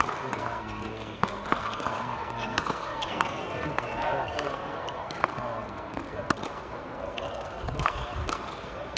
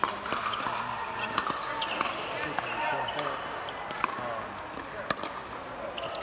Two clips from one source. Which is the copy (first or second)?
first